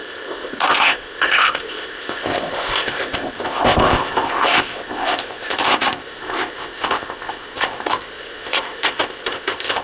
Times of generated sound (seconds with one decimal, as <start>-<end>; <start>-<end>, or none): 0.0-9.8